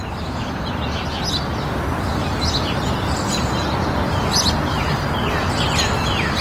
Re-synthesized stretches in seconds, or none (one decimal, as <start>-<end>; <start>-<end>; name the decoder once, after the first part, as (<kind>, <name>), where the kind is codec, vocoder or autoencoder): 0.8-1.3 (vocoder, BigVGAN v2)